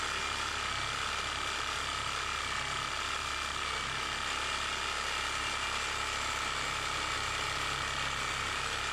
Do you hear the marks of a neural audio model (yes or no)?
no